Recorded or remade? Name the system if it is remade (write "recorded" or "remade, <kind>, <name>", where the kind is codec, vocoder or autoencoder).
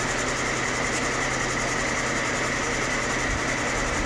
recorded